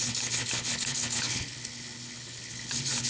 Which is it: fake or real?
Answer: fake